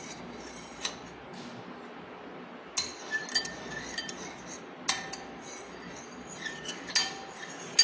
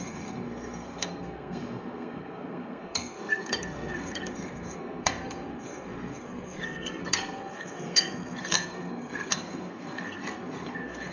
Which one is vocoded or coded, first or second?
second